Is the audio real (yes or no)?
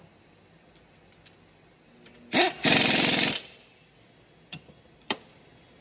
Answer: yes